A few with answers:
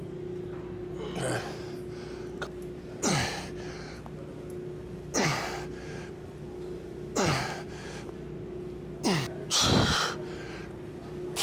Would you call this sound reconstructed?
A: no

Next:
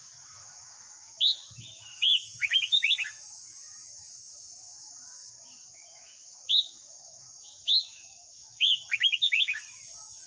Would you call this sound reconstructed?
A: yes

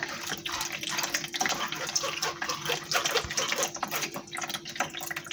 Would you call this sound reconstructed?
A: no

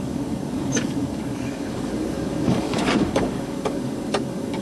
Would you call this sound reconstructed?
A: yes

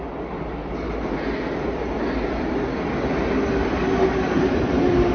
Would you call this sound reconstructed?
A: no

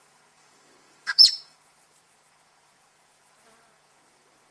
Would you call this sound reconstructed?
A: yes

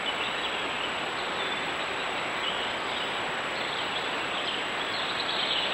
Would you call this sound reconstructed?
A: no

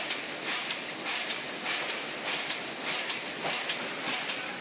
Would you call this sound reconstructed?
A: no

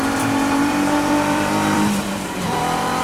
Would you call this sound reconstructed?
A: yes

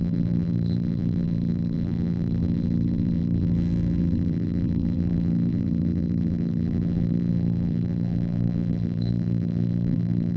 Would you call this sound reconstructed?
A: yes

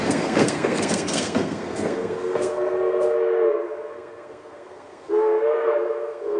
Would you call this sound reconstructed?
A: yes